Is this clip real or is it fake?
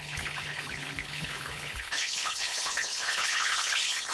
fake